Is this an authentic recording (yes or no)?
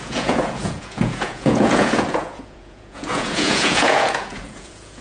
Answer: no